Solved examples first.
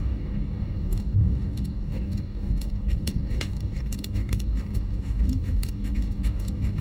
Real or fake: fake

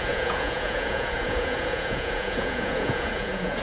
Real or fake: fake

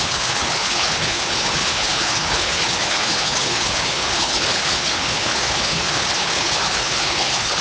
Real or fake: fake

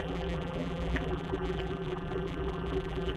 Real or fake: fake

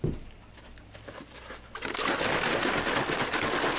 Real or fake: real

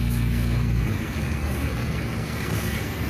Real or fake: fake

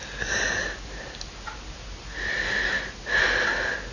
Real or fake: real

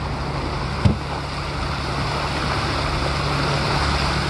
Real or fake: real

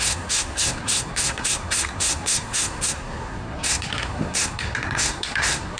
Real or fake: fake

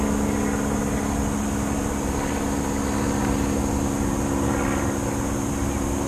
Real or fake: real